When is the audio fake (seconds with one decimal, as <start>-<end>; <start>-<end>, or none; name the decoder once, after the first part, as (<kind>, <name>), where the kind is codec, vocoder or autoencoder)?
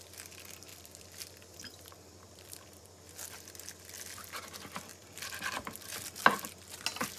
0.7-3.1 (vocoder, BigVGAN v2); 4.9-5.9